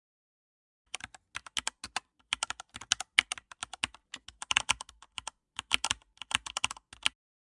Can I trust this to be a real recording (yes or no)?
yes